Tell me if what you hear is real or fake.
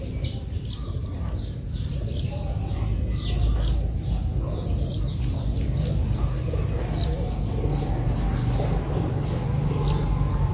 real